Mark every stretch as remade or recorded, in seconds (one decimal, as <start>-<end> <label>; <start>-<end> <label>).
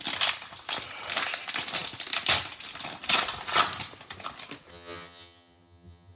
0.0-4.7 recorded; 4.7-6.2 remade